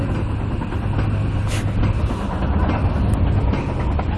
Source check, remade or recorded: recorded